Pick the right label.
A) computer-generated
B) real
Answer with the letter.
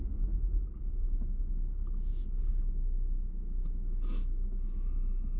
B